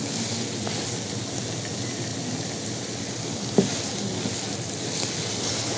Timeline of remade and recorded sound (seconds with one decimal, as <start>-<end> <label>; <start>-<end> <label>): 0.0-5.8 recorded